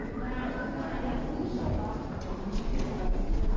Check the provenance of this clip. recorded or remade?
recorded